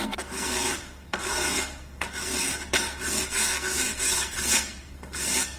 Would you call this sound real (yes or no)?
no